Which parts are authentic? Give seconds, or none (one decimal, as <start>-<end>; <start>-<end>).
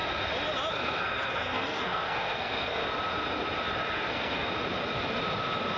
0.0-0.7; 2.8-4.1; 4.5-5.8